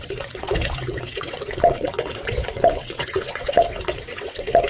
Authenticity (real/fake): fake